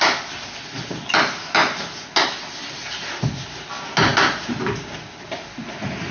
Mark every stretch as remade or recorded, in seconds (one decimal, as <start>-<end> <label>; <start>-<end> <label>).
0.0-6.1 recorded